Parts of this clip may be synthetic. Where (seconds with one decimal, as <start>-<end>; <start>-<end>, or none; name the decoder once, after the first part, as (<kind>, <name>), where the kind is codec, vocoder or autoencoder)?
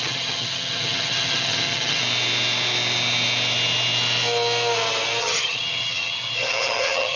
0.0-2.0 (vocoder, HiFi-GAN); 5.2-7.2